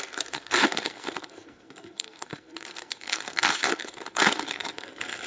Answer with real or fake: fake